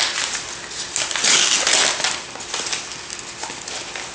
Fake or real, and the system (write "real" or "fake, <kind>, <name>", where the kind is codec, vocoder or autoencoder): real